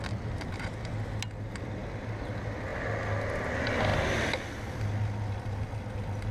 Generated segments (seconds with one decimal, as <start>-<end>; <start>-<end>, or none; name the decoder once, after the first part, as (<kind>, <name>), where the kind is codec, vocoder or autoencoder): none

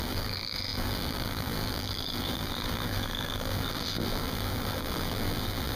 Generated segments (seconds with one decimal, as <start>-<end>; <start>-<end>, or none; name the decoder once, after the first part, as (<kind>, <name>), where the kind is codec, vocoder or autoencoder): 0.0-5.8 (vocoder, BigVGAN v2)

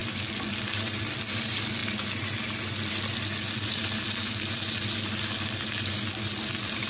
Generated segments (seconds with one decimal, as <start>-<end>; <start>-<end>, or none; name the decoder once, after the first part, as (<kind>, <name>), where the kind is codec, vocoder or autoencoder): none

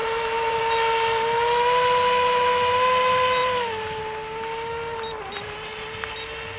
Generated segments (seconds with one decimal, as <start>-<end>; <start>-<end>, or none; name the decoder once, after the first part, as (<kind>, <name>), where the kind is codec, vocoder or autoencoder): 0.0-0.6 (vocoder, BigVGAN v2); 3.4-4.0

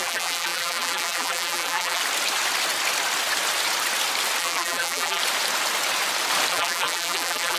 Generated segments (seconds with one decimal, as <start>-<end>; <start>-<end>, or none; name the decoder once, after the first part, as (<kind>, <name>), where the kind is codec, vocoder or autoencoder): 0.0-2.0 (vocoder, BigVGAN v2); 4.4-5.2; 6.5-7.6

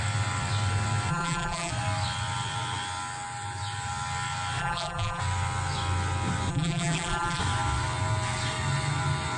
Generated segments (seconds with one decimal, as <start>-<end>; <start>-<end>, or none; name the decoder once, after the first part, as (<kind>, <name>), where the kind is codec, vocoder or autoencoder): 1.1-1.7 (vocoder, BigVGAN v2); 4.6-5.2; 6.5-7.4

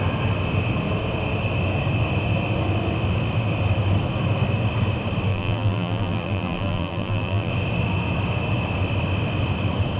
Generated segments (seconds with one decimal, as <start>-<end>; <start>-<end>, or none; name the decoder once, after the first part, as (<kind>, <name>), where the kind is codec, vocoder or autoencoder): 5.3-7.5 (vocoder, BigVGAN v2)

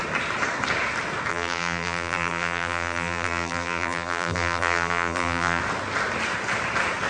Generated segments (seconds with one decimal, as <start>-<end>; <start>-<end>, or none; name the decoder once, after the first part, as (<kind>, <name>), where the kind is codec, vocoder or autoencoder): 1.3-5.6 (vocoder, BigVGAN v2)